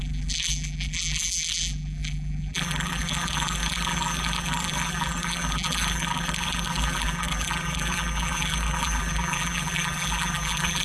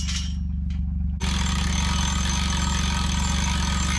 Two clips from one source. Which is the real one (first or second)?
second